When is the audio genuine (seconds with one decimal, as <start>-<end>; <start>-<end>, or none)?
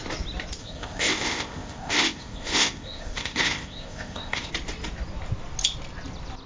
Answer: 0.0-0.6; 4.5-6.5